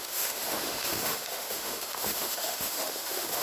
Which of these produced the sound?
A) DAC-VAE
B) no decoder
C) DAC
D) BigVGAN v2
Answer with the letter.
A